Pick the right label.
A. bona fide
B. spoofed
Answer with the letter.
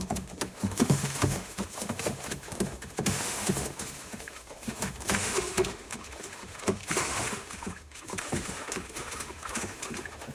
B